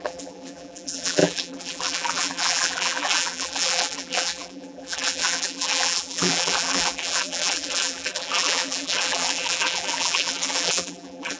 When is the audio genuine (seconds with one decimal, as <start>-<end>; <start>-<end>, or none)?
none